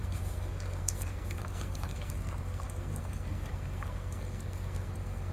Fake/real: fake